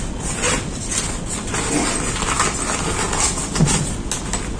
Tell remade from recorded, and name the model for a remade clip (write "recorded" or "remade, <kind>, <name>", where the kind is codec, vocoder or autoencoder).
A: recorded